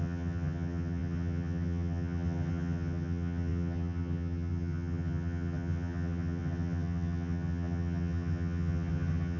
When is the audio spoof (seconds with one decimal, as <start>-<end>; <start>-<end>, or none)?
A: 0.0-9.4